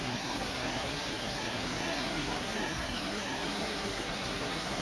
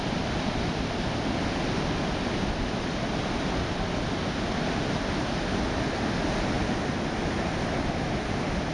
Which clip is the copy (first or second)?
first